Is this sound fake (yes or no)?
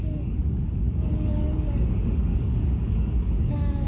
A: yes